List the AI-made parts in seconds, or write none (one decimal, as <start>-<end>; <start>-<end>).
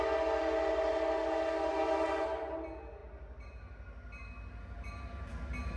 none